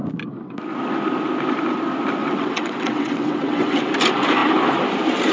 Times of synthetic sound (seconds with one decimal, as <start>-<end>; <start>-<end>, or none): 2.2-3.9